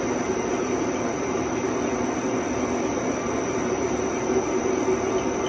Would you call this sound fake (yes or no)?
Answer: yes